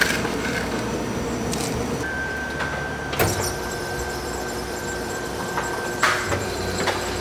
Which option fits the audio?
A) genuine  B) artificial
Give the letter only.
B